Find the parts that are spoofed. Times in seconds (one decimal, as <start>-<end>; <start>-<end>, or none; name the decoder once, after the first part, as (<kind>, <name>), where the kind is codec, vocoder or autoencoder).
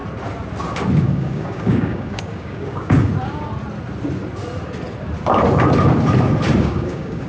1.0-3.1 (codec, DAC); 6.6-7.3